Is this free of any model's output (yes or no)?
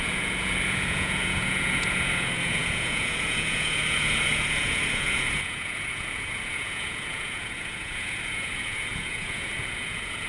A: no